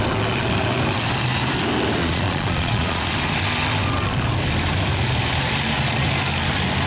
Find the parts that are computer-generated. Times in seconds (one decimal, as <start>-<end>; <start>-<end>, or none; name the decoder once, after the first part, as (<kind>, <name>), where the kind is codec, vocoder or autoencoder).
2.0-3.0 (vocoder, Vocos)